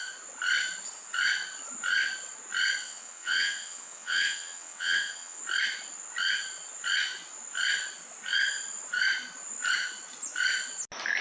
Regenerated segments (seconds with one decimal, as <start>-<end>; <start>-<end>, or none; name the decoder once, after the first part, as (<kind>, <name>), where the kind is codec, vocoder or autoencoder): 2.8-5.4 (vocoder, WaveNeXt)